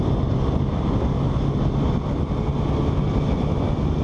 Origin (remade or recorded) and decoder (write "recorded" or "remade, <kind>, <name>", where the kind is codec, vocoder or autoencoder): recorded